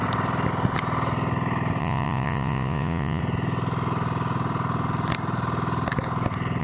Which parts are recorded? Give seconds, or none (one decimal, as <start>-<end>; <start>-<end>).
0.0-1.8; 3.2-6.6